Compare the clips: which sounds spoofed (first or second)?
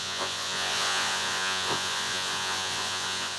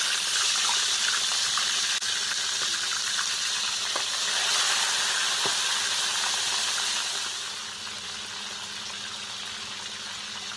first